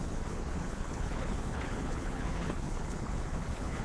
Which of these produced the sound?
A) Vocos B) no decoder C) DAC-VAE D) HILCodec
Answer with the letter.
D